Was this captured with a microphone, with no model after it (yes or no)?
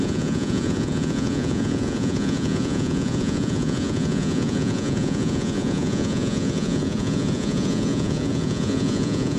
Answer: no